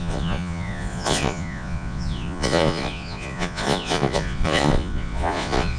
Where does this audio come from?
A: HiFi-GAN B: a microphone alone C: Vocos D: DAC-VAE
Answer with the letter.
C